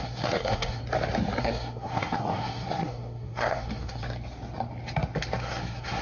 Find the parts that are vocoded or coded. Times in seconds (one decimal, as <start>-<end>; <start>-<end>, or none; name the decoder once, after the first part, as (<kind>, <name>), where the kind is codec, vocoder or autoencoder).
0.0-0.8 (codec, SNAC); 1.4-4.0; 5.4-6.0

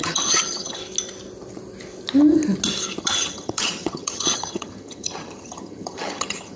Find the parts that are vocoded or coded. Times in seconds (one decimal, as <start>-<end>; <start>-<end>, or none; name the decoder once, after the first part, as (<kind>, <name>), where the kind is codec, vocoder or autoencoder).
0.0-0.8 (vocoder, HiFi-GAN); 3.0-6.6

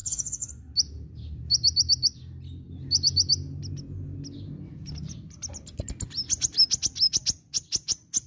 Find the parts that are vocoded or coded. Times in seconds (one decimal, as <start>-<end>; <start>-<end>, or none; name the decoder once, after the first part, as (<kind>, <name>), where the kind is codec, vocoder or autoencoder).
0.0-0.5 (vocoder, Vocos)

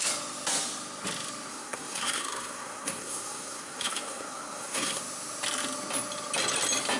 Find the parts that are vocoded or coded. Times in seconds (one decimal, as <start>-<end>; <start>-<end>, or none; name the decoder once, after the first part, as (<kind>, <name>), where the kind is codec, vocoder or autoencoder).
1.5-5.0 (codec, SNAC)

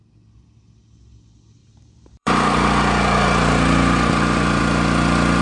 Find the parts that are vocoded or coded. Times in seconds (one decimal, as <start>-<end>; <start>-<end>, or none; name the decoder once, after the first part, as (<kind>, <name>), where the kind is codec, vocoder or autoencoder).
1.6-4.6 (vocoder, BigVGAN v2)

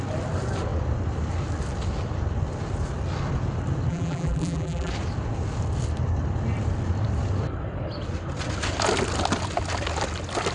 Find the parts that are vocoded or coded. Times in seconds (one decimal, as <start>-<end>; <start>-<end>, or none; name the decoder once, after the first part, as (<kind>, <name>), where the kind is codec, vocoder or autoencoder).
3.9-4.9 (vocoder, BigVGAN v2)

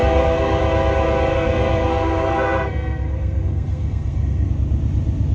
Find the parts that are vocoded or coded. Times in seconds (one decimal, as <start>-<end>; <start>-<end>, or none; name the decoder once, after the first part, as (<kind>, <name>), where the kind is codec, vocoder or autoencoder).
0.0-0.6 (codec, SNAC); 1.3-4.5

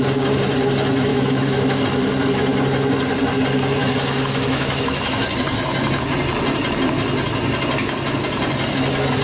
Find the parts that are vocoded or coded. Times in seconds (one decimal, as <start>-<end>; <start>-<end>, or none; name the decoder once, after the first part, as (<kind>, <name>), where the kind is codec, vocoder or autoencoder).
1.1-1.8 (autoencoder, DAC-VAE); 3.8-5.2